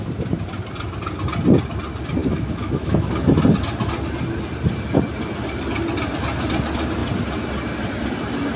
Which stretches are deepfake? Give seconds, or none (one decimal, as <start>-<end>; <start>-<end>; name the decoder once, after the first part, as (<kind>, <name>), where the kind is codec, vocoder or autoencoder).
2.2-3.1 (autoencoder, DAC-VAE)